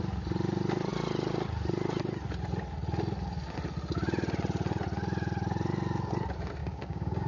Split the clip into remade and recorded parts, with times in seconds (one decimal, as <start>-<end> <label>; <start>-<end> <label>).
0.0-6.6 recorded; 6.6-7.3 remade